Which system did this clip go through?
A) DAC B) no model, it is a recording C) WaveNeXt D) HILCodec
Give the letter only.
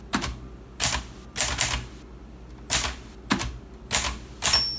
B